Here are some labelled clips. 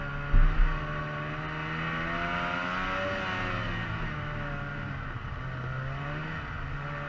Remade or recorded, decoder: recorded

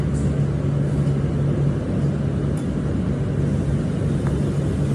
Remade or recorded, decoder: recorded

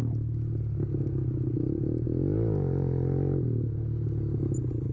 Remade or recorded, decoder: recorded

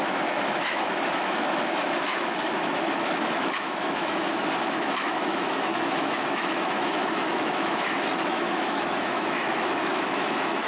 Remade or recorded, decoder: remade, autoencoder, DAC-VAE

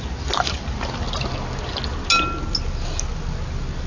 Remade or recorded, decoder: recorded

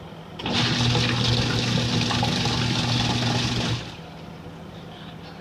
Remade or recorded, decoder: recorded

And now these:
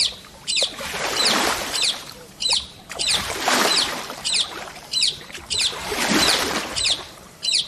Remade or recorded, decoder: remade, vocoder, BigVGAN v2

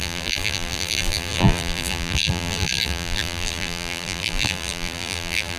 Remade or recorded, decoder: remade, vocoder, BigVGAN v2